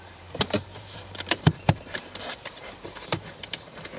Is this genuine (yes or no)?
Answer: no